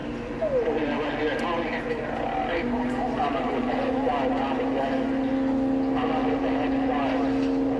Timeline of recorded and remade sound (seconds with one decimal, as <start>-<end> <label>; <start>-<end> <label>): 0.0-7.8 recorded